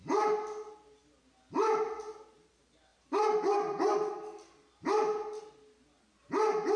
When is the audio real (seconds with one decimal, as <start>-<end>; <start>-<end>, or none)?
0.0-6.8